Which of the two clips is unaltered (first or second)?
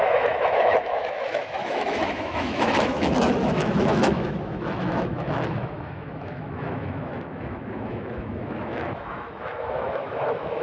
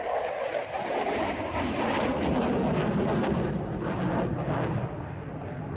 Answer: second